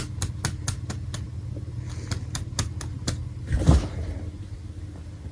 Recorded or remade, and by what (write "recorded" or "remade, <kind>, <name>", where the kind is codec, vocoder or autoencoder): recorded